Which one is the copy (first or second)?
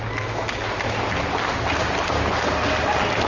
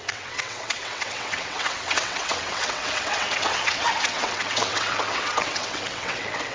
second